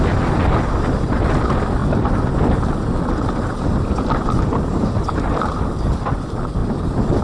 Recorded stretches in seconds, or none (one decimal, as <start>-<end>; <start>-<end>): 1.8-3.6